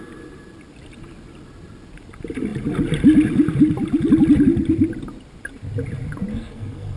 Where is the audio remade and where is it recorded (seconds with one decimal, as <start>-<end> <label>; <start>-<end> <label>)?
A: 0.0-6.3 recorded; 6.3-7.0 remade